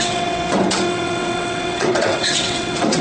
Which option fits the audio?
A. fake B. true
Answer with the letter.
A